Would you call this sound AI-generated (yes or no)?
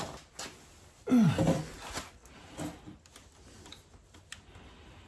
no